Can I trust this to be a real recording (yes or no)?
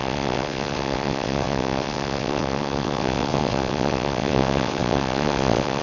no